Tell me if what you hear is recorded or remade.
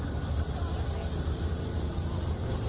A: recorded